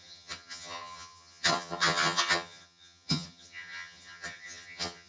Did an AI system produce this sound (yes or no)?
yes